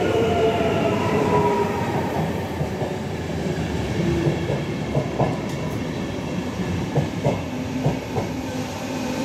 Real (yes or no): no